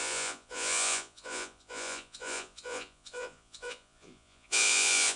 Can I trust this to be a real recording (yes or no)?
no